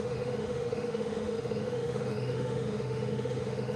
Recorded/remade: remade